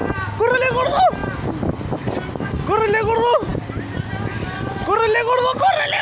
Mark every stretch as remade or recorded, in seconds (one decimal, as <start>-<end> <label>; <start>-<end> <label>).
0.0-6.0 recorded